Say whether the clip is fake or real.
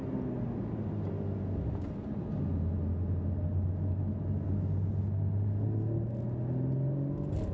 real